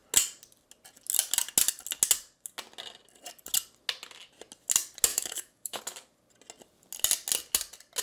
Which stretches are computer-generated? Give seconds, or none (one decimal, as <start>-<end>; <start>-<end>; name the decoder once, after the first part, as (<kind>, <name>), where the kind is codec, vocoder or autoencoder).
5.1-5.8 (autoencoder, DAC-VAE)